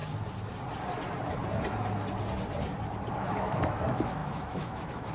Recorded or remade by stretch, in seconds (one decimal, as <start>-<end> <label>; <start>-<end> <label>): 0.0-3.1 recorded; 3.1-5.1 remade